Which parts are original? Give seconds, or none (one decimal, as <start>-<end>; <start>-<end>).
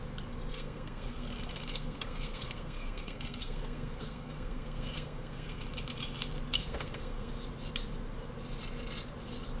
0.0-0.5; 5.6-6.6; 7.3-9.6